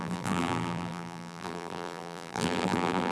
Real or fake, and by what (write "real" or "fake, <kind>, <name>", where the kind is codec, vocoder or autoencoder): fake, vocoder, BigVGAN v2